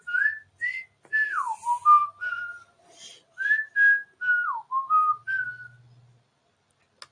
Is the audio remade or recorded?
recorded